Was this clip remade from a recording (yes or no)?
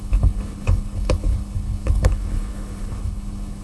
yes